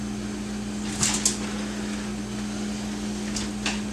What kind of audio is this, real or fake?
real